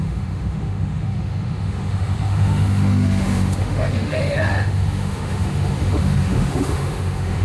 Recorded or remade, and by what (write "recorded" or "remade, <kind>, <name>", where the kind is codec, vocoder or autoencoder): remade, autoencoder, DAC-VAE